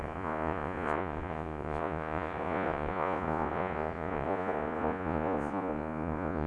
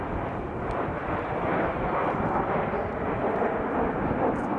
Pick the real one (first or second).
second